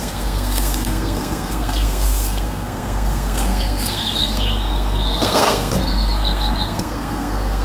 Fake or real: fake